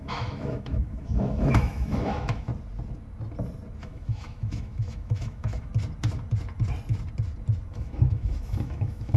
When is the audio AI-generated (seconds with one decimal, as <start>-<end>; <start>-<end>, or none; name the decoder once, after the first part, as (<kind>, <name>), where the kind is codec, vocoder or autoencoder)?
0.0-2.5 (autoencoder, DAC-VAE); 3.8-5.7; 7.7-9.2